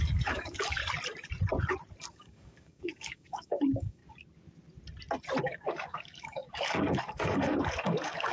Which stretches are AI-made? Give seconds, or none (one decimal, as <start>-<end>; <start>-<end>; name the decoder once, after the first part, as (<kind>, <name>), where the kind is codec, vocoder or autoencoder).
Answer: 0.0-0.8 (codec, DAC); 2.1-4.0; 5.4-8.3